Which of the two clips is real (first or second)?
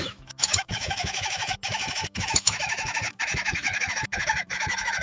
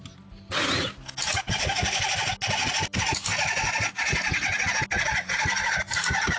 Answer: second